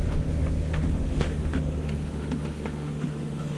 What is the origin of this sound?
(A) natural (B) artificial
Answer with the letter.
B